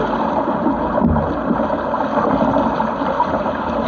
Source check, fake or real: real